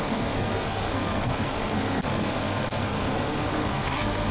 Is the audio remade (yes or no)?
yes